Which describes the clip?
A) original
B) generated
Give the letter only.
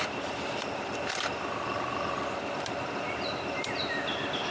B